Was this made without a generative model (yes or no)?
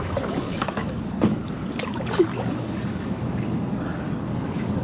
no